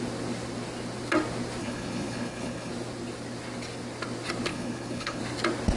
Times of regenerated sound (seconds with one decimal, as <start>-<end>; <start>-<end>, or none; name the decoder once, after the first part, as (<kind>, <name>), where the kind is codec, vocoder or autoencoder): 1.6-2.7 (codec, HILCodec); 4.5-5.2